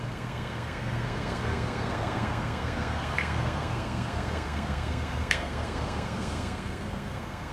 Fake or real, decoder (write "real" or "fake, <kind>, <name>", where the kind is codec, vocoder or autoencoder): fake, codec, SNAC